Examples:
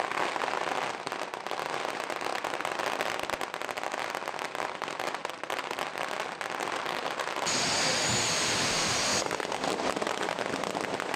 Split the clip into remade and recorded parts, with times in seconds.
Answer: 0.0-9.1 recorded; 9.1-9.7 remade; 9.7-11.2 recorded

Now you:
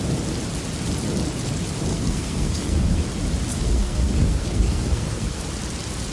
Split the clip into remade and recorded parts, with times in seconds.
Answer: 0.0-1.9 recorded; 1.9-3.0 remade; 3.0-3.5 recorded; 3.5-5.4 remade; 5.4-6.1 recorded

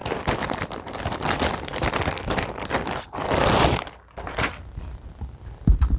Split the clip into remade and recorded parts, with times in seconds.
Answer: 0.0-6.0 remade

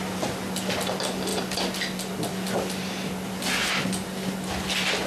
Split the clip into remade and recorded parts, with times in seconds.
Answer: 0.0-5.1 recorded

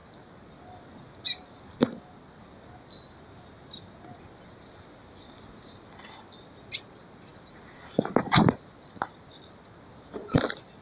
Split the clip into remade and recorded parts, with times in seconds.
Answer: 0.0-10.8 recorded

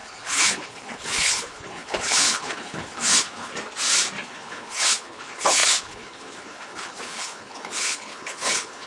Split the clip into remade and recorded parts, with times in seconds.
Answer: 0.0-3.5 remade; 3.5-4.3 recorded; 4.3-8.9 remade

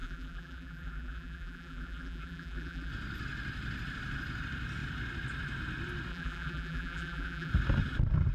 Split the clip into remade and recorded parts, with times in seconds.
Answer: 0.0-2.9 remade; 2.9-6.1 recorded; 6.1-7.5 remade; 7.5-8.3 recorded